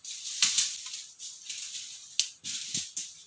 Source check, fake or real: real